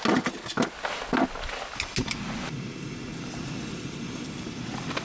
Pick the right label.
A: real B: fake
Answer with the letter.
A